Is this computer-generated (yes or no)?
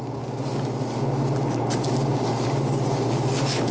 no